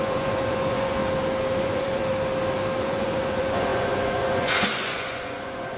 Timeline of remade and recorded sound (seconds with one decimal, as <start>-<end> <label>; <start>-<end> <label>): 0.0-1.0 remade; 1.0-1.6 recorded; 1.6-2.0 remade; 2.0-2.8 recorded; 2.8-5.8 remade